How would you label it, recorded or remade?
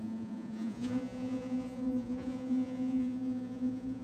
remade